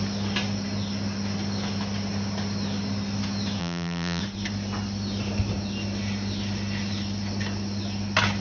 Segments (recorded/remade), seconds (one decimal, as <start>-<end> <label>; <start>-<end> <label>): 0.0-3.6 recorded; 3.6-4.2 remade; 4.2-8.4 recorded